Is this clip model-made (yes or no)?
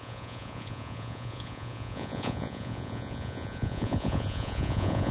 yes